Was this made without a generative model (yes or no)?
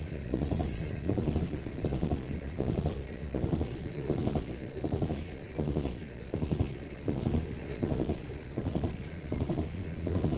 no